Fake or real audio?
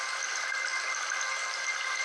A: real